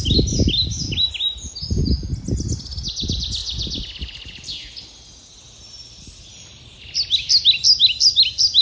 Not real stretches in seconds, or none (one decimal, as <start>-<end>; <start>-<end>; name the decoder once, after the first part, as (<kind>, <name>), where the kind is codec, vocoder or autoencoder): none